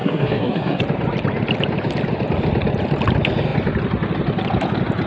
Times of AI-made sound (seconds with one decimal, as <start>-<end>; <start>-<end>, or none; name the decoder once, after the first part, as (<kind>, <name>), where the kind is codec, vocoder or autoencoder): 0.0-0.8 (codec, SNAC)